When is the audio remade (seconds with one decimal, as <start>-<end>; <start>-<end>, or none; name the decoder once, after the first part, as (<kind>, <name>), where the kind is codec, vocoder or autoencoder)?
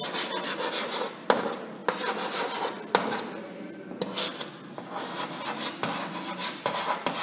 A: none